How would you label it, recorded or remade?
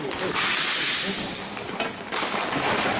recorded